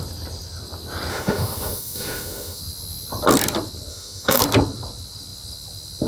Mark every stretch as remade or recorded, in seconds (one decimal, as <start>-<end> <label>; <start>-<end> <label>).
0.0-1.1 recorded; 1.1-2.6 remade; 2.6-3.9 recorded; 3.9-4.4 remade; 4.4-6.1 recorded